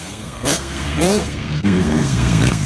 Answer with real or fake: fake